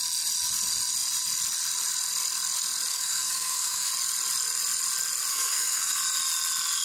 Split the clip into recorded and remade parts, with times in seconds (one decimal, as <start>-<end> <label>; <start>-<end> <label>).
0.0-2.9 recorded; 2.9-3.9 remade; 3.9-5.3 recorded; 5.3-5.9 remade; 5.9-6.8 recorded